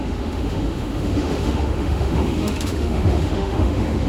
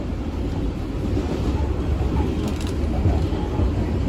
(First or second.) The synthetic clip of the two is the first